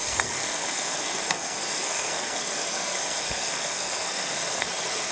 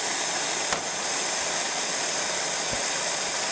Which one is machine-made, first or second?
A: first